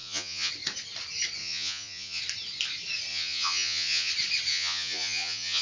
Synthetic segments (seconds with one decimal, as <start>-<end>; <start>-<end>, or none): 0.0-0.5; 1.4-2.2; 3.1-4.1; 4.5-5.6